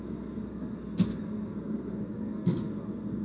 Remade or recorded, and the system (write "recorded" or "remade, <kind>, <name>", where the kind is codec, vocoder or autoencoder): remade, codec, SNAC